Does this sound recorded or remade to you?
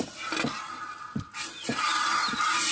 recorded